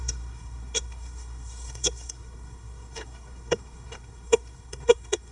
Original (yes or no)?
no